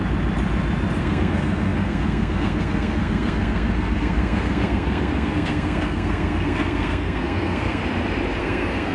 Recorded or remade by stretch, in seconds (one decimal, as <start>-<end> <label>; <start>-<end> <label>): 0.0-1.0 recorded; 1.0-7.8 remade; 7.8-8.4 recorded; 8.4-8.9 remade